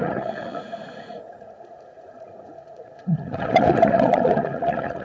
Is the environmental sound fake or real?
fake